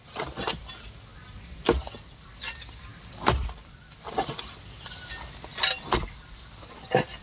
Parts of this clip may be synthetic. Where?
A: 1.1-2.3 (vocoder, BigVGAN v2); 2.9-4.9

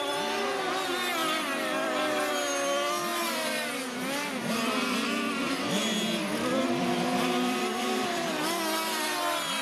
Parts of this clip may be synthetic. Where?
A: 1.2-2.3 (vocoder, BigVGAN v2); 3.1-8.3

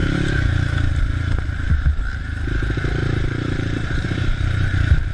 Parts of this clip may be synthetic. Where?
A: 3.0-5.1 (vocoder, BigVGAN v2)

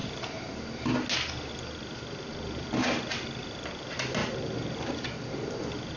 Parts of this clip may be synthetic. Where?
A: 4.2-5.6 (vocoder, BigVGAN v2)

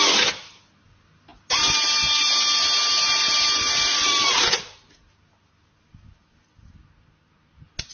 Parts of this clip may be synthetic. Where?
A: 1.3-2.3 (vocoder, BigVGAN v2); 2.8-4.3

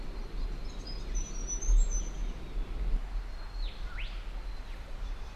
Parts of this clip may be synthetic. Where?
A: 0.0-1.4 (vocoder, BigVGAN v2); 4.6-5.4